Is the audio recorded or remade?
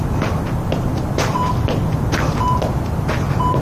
recorded